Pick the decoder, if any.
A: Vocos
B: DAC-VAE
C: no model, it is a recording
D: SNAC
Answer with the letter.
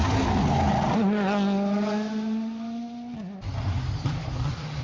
C